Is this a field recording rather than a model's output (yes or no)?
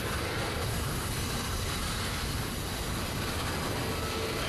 yes